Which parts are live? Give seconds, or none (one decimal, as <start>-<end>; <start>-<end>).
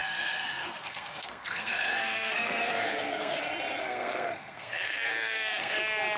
3.4-3.8; 5.8-6.2